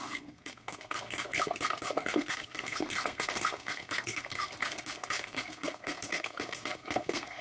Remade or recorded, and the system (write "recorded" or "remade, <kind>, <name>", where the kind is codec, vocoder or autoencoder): remade, codec, SNAC